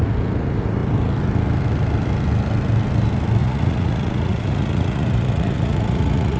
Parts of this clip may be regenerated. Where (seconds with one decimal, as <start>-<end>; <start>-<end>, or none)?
3.4-6.4